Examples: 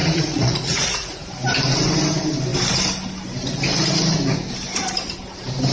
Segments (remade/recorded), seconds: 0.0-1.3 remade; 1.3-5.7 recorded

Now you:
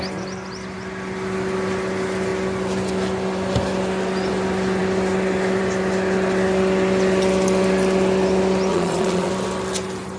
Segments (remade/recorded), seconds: 0.0-8.7 recorded; 8.7-9.3 remade; 9.3-10.2 recorded

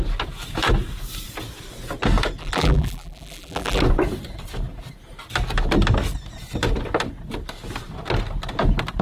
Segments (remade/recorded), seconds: 0.0-2.4 recorded; 2.4-3.8 remade; 3.8-9.0 recorded

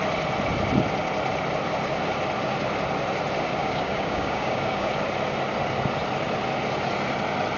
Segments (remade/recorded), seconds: 0.0-3.6 recorded; 3.6-4.9 remade; 4.9-7.6 recorded

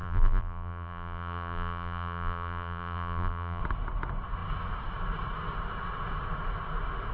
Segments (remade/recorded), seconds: 0.0-3.6 remade; 3.6-7.1 recorded

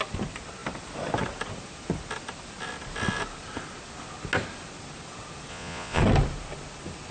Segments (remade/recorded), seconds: 0.0-5.5 recorded; 5.5-6.0 remade; 6.0-7.1 recorded

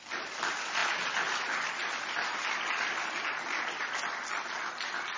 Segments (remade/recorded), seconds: 0.0-5.2 recorded

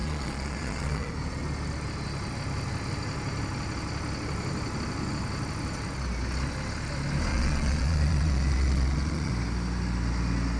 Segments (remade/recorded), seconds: 0.0-1.1 remade; 1.1-7.3 recorded; 7.3-9.3 remade; 9.3-10.6 recorded